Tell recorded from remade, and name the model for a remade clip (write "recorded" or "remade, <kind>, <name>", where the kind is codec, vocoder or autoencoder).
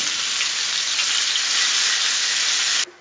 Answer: recorded